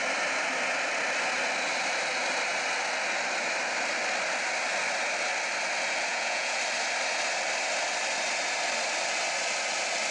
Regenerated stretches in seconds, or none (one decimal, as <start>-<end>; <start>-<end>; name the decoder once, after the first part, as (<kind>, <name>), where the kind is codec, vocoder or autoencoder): 6.1-6.6 (vocoder, Vocos)